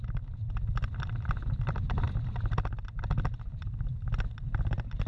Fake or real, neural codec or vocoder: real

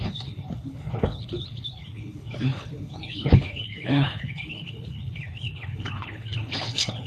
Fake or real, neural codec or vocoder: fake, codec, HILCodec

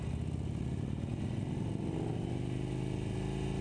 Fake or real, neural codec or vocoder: real